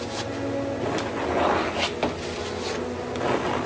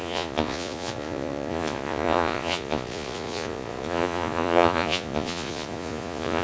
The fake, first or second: second